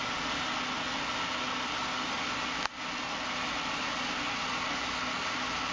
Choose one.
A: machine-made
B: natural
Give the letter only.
B